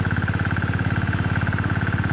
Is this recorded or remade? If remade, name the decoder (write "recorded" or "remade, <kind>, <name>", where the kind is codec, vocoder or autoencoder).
recorded